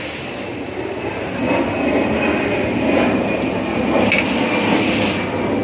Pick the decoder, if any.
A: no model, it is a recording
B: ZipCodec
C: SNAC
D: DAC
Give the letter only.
A